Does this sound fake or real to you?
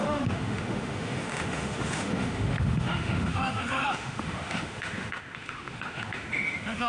fake